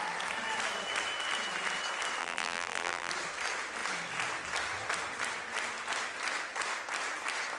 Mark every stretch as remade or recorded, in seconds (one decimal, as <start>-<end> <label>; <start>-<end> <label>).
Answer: 0.0-2.2 recorded; 2.2-3.1 remade; 3.1-7.6 recorded